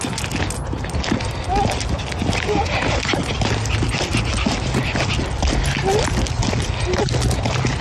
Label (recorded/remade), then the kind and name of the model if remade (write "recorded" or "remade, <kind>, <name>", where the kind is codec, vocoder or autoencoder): recorded